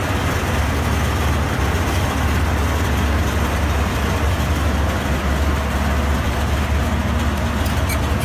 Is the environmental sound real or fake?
real